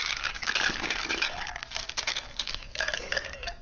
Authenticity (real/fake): fake